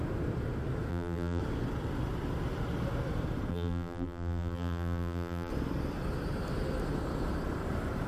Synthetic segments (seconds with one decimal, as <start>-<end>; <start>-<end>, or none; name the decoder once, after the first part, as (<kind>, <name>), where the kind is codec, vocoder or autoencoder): 0.9-1.4 (vocoder, BigVGAN v2); 3.5-5.5